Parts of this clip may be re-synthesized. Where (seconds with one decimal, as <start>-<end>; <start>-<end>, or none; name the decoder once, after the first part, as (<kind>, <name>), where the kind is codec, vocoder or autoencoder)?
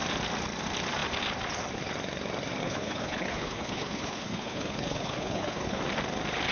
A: 2.6-5.8 (codec, HILCodec)